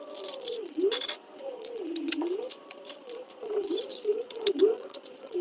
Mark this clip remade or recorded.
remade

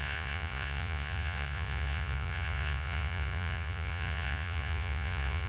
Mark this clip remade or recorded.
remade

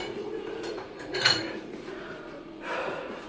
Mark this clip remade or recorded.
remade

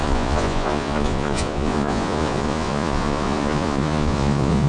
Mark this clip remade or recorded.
remade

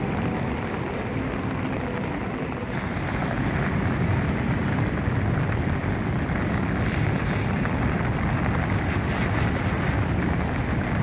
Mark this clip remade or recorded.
recorded